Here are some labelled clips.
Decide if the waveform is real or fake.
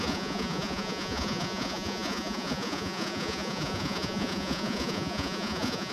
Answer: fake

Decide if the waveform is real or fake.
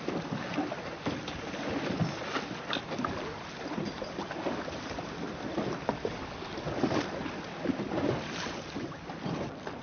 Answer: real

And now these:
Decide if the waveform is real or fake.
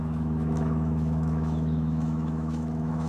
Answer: fake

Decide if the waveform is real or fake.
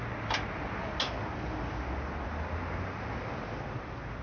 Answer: real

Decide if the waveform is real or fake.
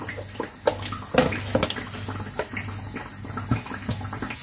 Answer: real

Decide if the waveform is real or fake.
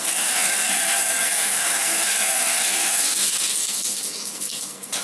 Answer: fake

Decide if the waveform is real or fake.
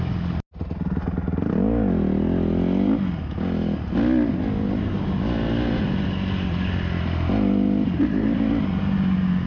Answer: real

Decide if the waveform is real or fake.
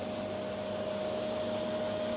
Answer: real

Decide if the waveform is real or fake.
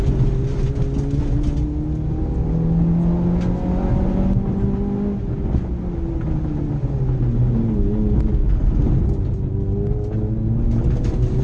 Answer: real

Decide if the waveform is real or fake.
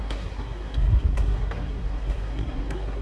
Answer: fake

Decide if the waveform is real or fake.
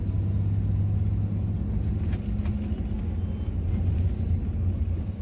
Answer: real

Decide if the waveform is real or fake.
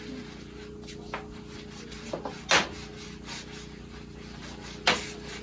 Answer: real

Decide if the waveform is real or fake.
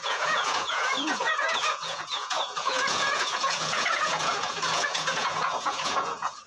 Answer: fake